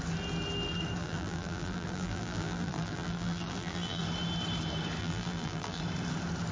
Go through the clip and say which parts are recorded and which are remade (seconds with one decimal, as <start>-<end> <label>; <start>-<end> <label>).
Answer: 0.0-1.0 recorded; 1.0-4.0 remade; 4.0-5.0 recorded; 5.0-5.8 remade; 5.8-6.5 recorded